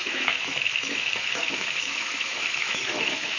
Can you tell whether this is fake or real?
fake